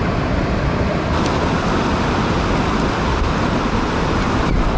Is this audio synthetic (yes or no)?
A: no